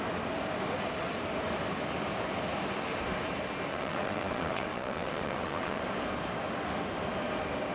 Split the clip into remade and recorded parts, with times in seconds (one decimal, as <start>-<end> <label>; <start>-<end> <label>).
0.0-3.7 recorded; 3.7-5.8 remade; 5.8-7.7 recorded